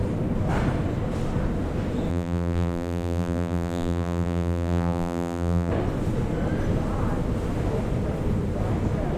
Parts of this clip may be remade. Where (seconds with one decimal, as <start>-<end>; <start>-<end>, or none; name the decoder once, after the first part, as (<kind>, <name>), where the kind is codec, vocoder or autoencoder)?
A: 2.1-5.7 (vocoder, BigVGAN v2)